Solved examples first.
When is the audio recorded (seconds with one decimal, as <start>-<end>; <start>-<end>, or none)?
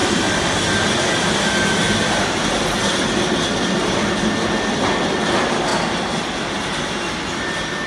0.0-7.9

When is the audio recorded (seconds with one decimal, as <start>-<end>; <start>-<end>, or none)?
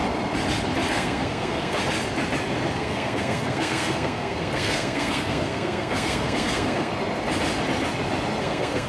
0.0-0.9; 1.8-2.7; 6.9-8.4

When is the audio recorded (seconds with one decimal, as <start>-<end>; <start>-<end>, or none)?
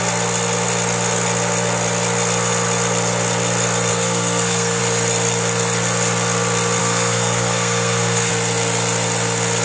0.0-3.9; 4.8-6.8; 8.3-9.6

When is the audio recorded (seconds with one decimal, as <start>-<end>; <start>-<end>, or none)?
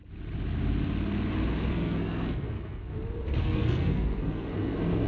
0.0-1.7; 2.9-3.4